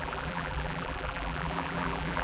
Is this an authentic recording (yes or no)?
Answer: no